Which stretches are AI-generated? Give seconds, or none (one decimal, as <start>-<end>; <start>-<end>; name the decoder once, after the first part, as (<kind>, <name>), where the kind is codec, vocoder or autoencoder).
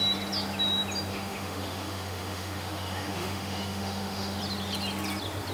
1.1-4.4 (autoencoder, DAC-VAE)